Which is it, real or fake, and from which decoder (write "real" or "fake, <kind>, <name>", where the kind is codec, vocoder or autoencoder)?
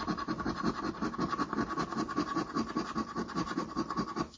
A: real